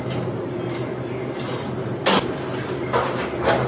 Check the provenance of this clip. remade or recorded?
recorded